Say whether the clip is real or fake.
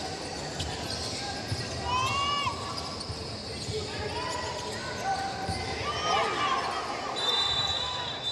real